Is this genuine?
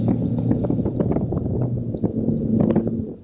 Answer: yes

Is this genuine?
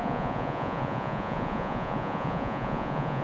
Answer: no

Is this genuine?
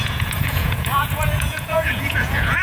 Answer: no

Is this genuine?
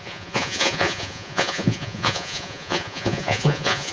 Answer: no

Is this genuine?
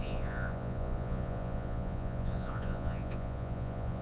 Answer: no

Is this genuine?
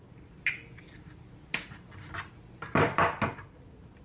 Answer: yes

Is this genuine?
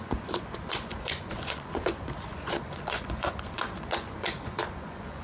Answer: no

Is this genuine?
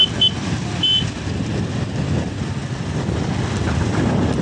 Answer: yes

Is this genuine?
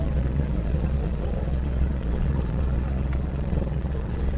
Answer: no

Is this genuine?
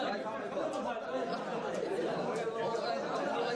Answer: yes